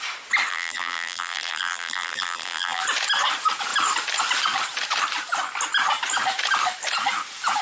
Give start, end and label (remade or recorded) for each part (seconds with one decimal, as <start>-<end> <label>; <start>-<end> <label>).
0.0-0.5 recorded; 0.5-2.8 remade; 2.8-7.6 recorded